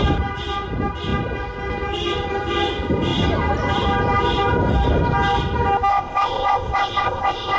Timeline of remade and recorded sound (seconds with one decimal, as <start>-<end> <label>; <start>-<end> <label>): 0.0-5.9 recorded; 5.9-7.6 remade